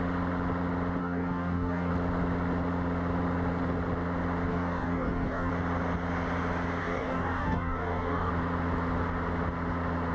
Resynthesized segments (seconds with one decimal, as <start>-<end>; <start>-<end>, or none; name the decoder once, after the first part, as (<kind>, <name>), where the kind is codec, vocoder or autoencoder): 1.0-1.9 (codec, DAC); 4.5-5.5; 6.8-8.3